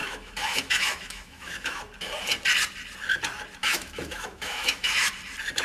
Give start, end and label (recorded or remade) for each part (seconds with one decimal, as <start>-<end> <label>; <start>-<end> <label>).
0.0-1.8 remade; 1.8-3.6 recorded; 3.6-5.1 remade; 5.1-5.6 recorded